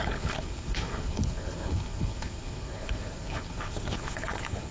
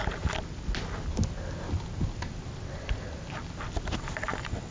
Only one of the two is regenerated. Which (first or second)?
first